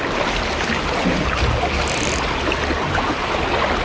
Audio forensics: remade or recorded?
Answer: recorded